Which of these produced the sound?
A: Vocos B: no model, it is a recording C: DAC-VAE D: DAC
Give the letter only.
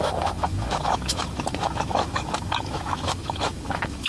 C